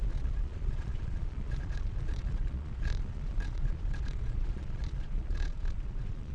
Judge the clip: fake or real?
fake